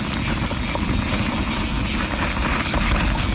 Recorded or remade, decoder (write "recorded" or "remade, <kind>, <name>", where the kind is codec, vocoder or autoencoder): recorded